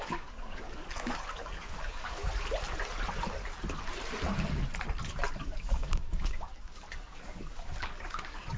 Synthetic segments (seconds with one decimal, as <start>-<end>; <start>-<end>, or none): 0.0-2.2; 5.4-8.6